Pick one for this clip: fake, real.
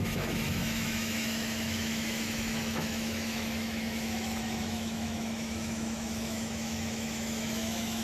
fake